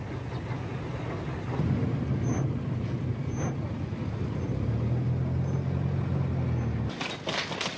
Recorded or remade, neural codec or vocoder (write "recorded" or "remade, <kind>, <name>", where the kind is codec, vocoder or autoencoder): recorded